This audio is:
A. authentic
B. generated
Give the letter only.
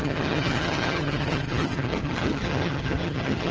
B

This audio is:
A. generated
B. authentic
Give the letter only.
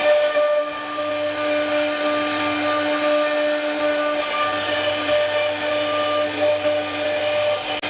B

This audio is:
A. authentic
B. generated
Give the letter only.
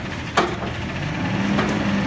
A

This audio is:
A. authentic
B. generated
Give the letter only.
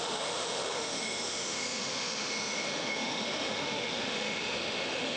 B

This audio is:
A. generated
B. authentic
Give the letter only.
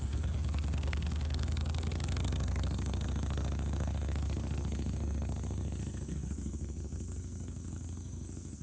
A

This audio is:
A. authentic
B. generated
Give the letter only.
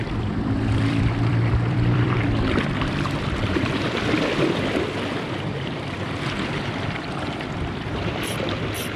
B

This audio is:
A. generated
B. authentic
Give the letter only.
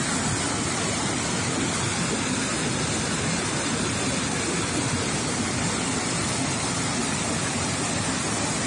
B